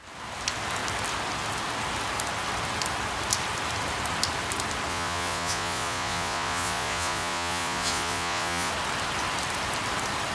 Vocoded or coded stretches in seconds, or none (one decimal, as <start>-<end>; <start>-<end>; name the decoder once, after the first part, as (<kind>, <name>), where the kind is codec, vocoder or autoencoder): 4.9-8.7 (vocoder, Vocos)